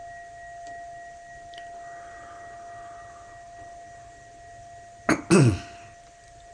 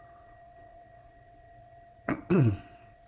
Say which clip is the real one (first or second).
first